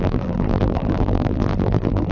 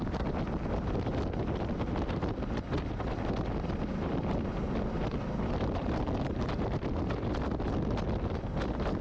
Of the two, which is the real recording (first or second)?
second